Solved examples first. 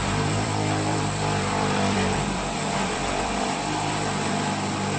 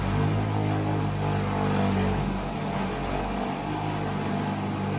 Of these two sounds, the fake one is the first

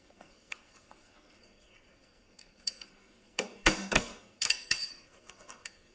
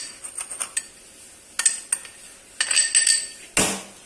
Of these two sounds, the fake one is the first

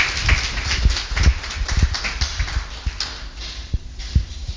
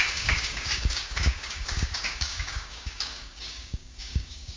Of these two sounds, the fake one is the second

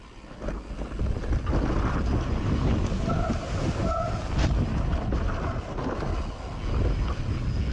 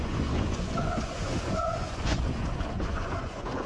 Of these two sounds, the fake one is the second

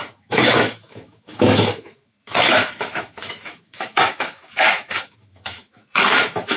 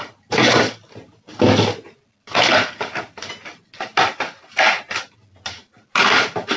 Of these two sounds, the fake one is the first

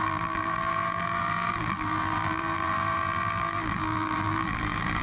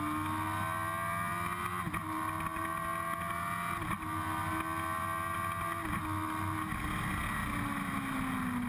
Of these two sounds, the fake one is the first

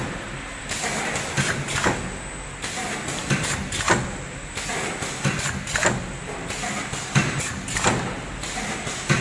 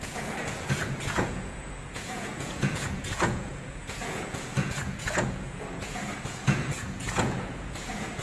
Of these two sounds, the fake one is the second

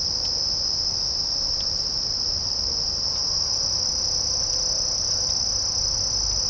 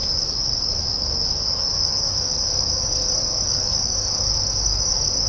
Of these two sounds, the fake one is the second